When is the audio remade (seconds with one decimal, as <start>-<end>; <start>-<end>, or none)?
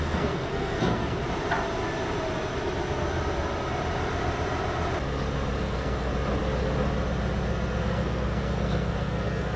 0.0-1.2; 5.6-6.1; 7.8-9.6